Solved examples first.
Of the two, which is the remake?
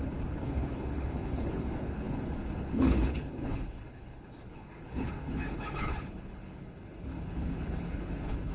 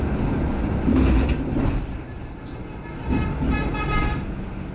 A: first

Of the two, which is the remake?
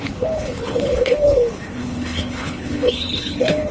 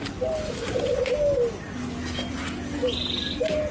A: first